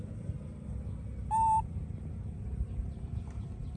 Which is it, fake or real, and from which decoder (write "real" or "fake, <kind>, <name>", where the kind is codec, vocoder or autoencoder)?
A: real